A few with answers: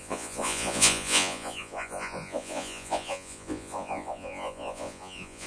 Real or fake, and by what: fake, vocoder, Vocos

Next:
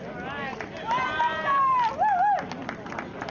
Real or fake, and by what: real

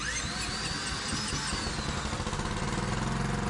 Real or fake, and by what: real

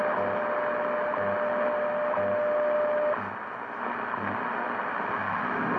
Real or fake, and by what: real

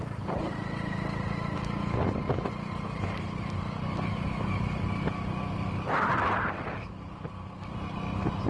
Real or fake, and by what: real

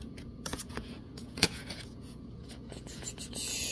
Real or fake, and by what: fake, vocoder, Vocos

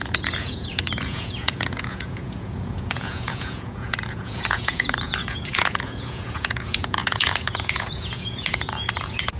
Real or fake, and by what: fake, vocoder, Vocos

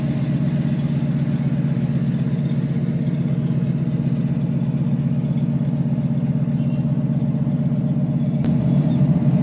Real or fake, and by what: real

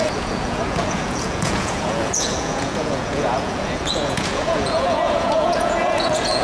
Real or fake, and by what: fake, vocoder, Vocos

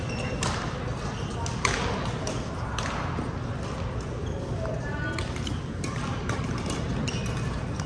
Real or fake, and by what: real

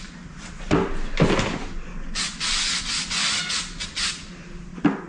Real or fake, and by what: real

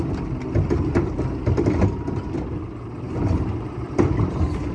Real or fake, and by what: real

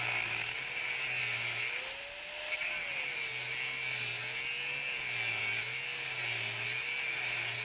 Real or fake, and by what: real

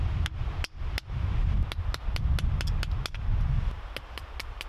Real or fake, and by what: real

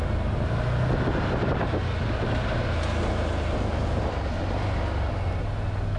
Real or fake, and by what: real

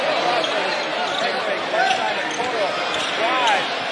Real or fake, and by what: real